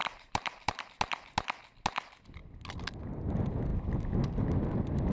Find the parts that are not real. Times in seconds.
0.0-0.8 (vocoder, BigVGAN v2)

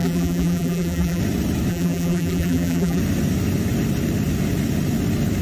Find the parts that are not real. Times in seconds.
0.0-1.2 (vocoder, BigVGAN v2); 1.7-3.0

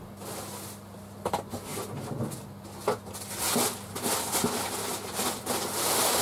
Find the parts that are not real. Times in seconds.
4.9-6.2 (vocoder, BigVGAN v2)